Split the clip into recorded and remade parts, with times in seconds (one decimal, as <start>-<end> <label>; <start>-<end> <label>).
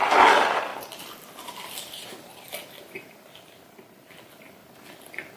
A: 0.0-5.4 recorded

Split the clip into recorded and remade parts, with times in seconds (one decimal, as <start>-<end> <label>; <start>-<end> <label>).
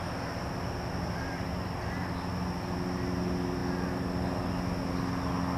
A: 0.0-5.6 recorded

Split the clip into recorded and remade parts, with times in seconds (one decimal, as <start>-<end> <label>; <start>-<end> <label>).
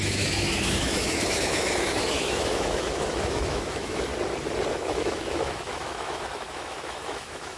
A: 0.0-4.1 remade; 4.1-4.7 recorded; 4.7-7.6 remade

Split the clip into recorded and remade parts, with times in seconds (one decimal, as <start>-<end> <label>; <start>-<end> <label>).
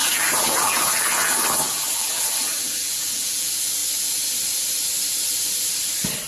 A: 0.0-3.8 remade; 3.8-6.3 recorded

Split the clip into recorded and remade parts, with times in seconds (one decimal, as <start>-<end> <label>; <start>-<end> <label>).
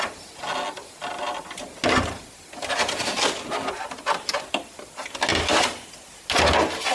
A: 0.0-5.3 recorded; 5.3-5.9 remade; 5.9-6.9 recorded